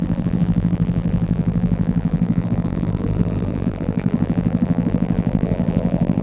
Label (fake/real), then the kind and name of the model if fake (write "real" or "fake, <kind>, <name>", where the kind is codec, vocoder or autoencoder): fake, vocoder, BigVGAN v2